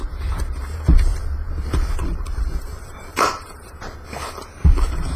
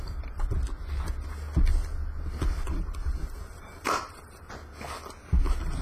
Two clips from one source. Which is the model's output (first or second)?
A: first